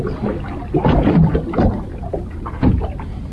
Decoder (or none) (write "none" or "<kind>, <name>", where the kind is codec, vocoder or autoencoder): none